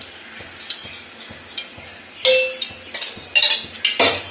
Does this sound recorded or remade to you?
recorded